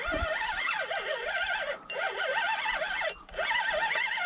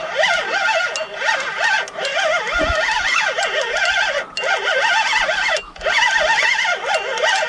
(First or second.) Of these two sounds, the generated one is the first